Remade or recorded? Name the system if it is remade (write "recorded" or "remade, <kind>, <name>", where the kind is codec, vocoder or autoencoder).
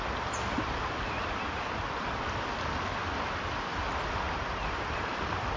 recorded